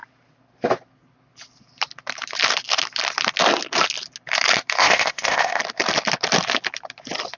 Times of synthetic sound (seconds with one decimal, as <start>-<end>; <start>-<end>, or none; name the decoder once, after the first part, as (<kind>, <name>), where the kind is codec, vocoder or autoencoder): 4.8-5.6 (codec, ZipCodec)